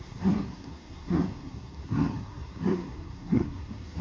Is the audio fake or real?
fake